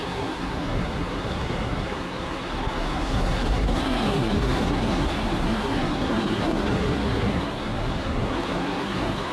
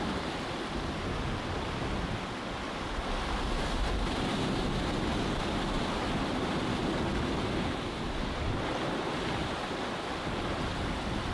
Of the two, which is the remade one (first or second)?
first